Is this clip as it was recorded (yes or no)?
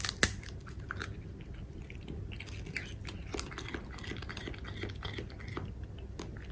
yes